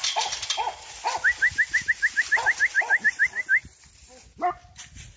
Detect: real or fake real